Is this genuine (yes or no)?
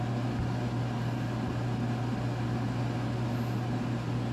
yes